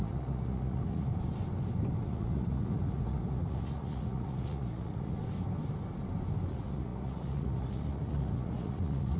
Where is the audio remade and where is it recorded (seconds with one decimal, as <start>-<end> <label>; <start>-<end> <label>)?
0.0-1.1 remade; 1.1-2.0 recorded; 2.0-5.2 remade; 5.2-6.5 recorded; 6.5-9.2 remade